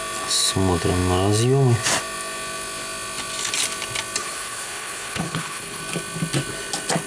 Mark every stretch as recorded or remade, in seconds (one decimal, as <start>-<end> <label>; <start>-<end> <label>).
0.0-4.2 recorded; 4.2-5.8 remade; 5.8-7.1 recorded

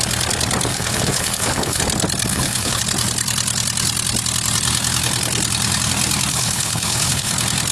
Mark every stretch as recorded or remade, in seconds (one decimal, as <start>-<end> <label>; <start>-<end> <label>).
0.0-0.7 recorded; 0.7-1.8 remade; 1.8-2.3 recorded; 2.3-2.8 remade; 2.8-6.3 recorded; 6.3-7.3 remade; 7.3-7.7 recorded

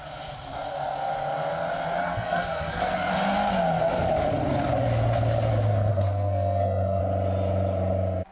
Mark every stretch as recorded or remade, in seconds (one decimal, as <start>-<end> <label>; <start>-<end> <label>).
0.0-2.0 recorded; 2.0-3.1 remade; 3.1-5.9 recorded; 5.9-7.0 remade; 7.0-8.3 recorded